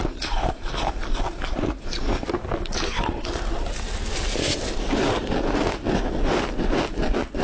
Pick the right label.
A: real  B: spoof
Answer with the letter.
A